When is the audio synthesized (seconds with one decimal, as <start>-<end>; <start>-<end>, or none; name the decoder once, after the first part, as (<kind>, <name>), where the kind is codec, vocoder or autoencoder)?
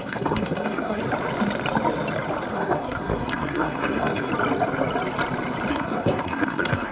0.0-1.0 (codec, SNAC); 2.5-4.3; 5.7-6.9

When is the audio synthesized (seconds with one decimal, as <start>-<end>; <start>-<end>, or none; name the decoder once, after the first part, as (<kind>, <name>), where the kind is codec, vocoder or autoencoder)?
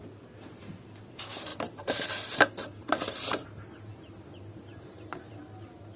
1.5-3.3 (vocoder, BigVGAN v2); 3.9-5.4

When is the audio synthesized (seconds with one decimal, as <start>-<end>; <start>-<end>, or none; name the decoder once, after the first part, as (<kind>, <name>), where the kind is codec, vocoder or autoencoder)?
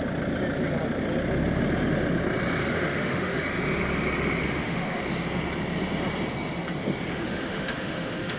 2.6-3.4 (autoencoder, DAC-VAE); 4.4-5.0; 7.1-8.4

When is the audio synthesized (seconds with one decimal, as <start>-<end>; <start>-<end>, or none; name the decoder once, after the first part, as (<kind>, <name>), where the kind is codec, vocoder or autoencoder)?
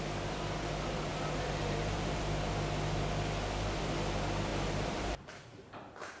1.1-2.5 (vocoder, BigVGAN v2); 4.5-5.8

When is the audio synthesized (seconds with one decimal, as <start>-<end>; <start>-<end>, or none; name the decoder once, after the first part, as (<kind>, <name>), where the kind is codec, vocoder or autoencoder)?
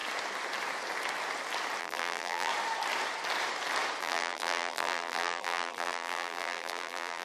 1.8-2.5 (vocoder, BigVGAN v2); 4.0-7.2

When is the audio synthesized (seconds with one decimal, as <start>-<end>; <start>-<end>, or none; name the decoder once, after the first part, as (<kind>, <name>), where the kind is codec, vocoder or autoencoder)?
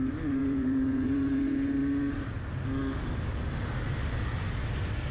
0.4-1.4 (vocoder, Vocos)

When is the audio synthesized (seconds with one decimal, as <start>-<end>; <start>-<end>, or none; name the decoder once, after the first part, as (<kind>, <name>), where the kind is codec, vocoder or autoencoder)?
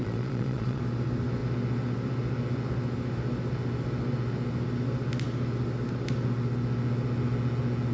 0.0-0.8 (vocoder, Vocos)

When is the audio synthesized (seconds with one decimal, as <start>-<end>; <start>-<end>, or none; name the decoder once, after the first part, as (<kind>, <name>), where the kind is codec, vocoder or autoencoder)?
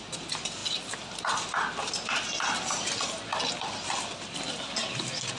none